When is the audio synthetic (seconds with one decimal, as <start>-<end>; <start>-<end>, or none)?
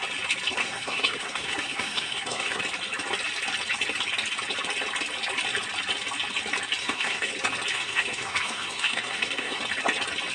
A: 0.6-2.6; 6.8-7.3; 7.7-9.6